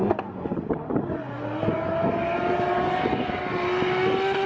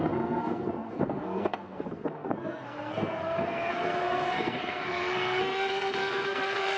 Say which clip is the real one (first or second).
first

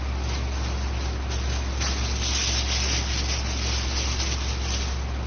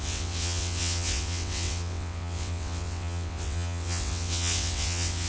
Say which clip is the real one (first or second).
first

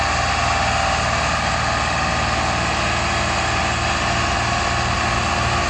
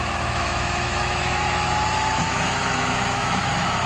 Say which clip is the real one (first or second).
first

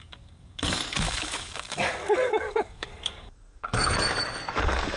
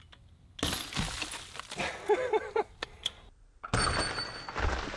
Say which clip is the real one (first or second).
second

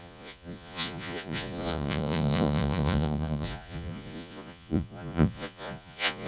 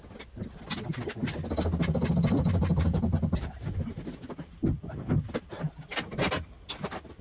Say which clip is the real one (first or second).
second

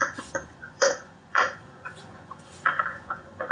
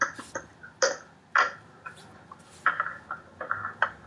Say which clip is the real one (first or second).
second